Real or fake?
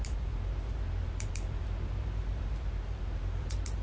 fake